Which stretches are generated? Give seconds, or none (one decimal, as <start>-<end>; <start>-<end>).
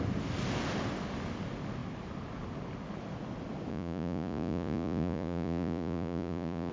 3.7-6.7